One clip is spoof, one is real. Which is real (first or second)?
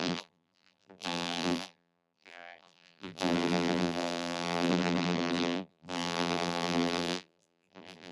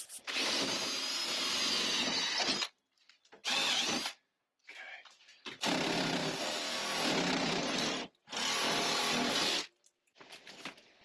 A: second